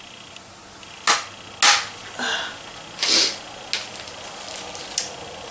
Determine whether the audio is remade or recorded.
recorded